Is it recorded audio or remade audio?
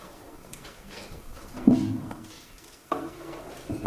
remade